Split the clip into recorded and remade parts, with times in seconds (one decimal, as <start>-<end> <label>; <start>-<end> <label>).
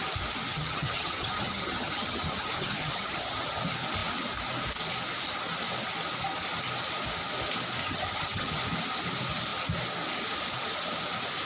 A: 0.0-0.5 recorded; 0.5-3.6 remade; 3.6-7.8 recorded; 7.8-8.6 remade; 8.6-11.4 recorded